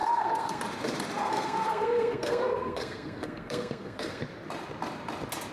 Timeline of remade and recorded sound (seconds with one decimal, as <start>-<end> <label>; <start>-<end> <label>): 0.0-0.6 remade; 0.6-1.2 recorded; 1.2-4.2 remade; 4.2-5.5 recorded